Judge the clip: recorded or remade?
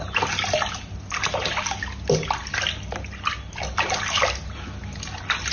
recorded